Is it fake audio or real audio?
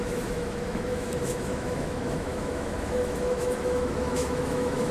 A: fake